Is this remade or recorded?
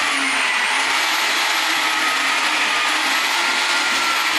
recorded